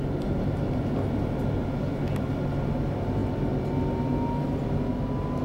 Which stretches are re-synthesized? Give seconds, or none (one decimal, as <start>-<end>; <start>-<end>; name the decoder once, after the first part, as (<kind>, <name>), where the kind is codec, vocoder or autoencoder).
none